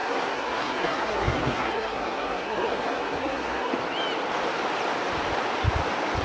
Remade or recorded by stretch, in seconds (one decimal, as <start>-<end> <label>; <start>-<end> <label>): 0.0-3.7 remade; 3.7-6.2 recorded